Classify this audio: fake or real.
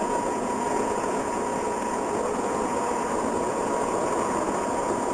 fake